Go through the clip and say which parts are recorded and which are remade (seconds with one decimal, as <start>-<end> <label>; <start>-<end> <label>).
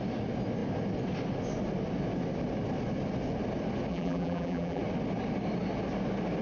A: 0.0-3.9 recorded; 3.9-4.8 remade; 4.8-6.4 recorded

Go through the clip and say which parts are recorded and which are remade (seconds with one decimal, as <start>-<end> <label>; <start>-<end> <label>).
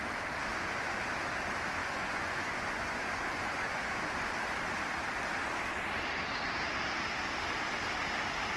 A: 0.0-0.5 recorded; 0.5-1.0 remade; 1.0-1.8 recorded; 1.8-4.3 remade; 4.3-8.6 recorded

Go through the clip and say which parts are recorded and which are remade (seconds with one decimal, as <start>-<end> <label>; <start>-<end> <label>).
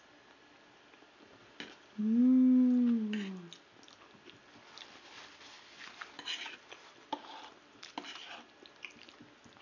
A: 0.0-9.6 recorded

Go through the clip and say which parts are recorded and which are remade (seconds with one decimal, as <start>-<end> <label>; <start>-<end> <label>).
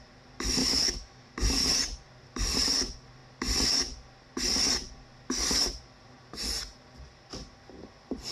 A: 0.0-0.6 recorded; 0.6-1.3 remade; 1.3-8.3 recorded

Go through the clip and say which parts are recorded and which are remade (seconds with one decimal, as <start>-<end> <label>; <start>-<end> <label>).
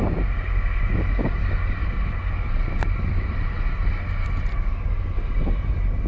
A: 0.0-6.1 recorded